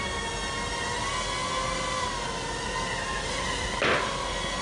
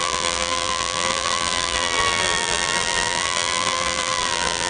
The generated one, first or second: second